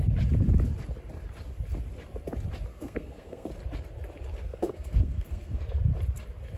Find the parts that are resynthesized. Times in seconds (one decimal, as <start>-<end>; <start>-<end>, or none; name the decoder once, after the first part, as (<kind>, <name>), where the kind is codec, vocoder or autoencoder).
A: 2.7-3.5 (codec, SNAC); 4.4-5.6